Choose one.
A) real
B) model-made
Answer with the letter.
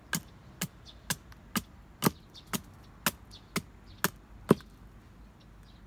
A